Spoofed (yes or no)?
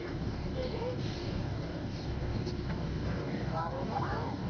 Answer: yes